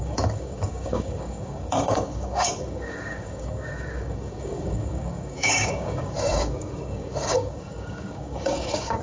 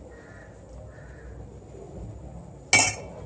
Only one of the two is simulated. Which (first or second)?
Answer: first